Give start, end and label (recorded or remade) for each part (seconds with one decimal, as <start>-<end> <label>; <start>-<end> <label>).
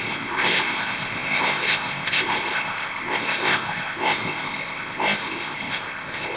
0.0-6.4 remade